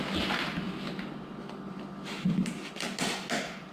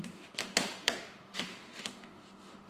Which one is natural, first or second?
first